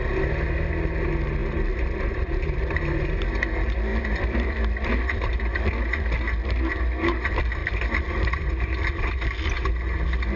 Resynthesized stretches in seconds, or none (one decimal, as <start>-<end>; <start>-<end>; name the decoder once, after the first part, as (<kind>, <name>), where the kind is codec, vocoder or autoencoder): 1.4-3.1 (vocoder, BigVGAN v2); 3.9-5.4; 7.6-9.1

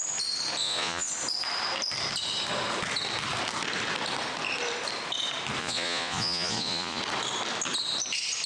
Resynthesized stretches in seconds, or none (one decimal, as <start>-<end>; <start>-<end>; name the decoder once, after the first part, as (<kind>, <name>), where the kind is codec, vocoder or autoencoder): 0.6-1.1 (vocoder, Vocos); 5.6-7.0

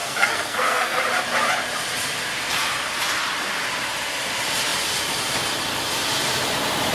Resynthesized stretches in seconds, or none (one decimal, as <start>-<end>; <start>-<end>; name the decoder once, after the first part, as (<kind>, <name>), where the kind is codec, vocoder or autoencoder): 0.0-1.0 (codec, SNAC)

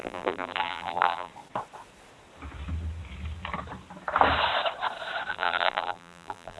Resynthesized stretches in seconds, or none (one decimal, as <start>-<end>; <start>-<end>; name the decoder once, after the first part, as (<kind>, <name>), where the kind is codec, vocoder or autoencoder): 0.0-1.3 (vocoder, BigVGAN v2); 5.3-6.6

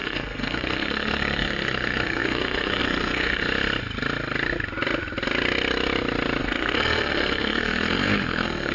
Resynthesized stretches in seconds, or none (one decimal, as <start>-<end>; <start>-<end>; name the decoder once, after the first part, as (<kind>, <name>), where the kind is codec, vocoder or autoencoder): 0.0-3.4 (codec, SNAC); 6.4-8.7